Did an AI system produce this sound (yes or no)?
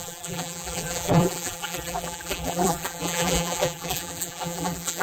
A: yes